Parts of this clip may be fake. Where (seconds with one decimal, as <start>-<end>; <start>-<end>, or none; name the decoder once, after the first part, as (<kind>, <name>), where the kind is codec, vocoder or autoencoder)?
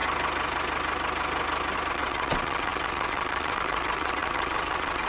1.9-5.1 (vocoder, WaveNeXt)